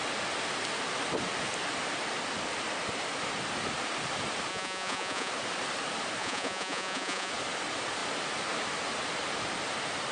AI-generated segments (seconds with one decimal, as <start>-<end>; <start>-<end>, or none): 4.5-5.3; 6.2-7.3